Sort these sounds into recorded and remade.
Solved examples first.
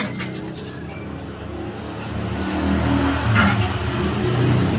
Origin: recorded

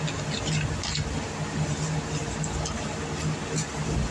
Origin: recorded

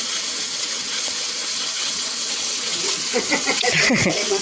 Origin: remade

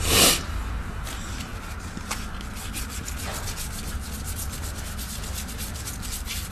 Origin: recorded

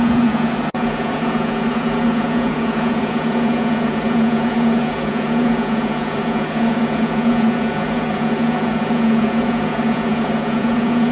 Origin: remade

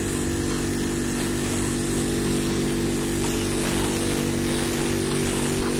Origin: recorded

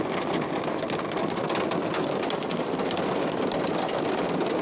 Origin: recorded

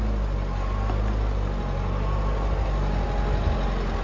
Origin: recorded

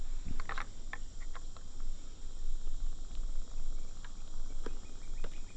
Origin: recorded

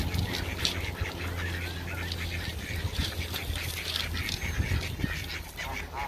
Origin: recorded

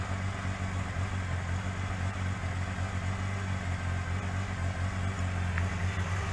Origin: recorded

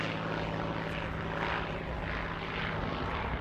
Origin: recorded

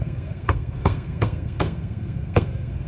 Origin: remade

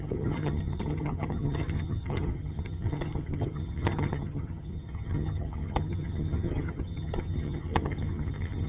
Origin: remade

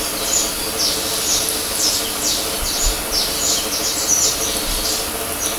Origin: recorded